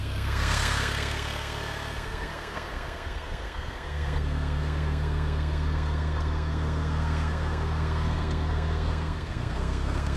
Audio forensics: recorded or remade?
remade